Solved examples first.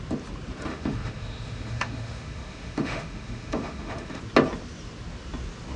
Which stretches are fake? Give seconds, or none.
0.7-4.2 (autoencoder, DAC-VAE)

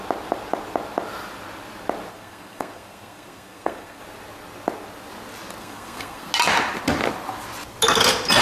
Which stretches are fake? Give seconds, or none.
2.1-4.0 (codec, SNAC); 5.6-6.3

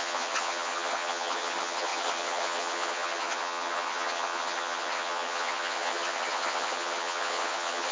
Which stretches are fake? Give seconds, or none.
0.0-7.9 (vocoder, HiFi-GAN)